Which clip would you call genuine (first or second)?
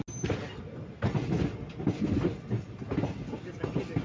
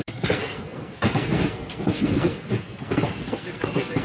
first